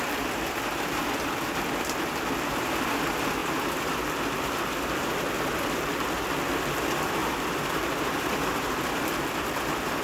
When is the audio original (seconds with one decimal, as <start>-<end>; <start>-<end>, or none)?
none